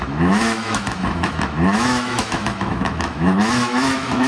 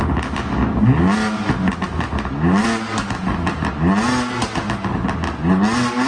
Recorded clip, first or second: second